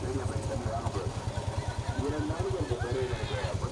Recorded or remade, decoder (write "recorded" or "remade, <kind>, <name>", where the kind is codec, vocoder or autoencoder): recorded